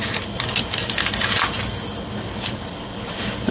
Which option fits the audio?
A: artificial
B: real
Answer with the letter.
B